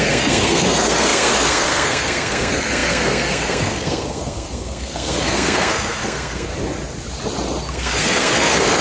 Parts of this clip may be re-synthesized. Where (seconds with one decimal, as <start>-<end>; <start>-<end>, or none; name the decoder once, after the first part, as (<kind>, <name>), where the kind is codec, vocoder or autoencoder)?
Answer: 0.0-6.5 (codec, SNAC); 7.7-8.8